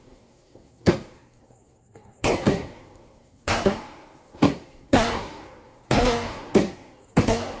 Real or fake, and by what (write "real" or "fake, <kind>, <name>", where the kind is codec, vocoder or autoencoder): fake, codec, SNAC